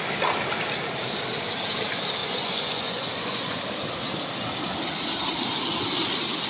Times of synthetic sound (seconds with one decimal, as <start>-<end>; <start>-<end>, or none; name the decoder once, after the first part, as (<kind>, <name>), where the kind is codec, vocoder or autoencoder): 2.2-3.6 (vocoder, Vocos)